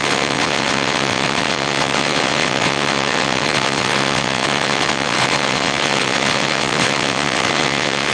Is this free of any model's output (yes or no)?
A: no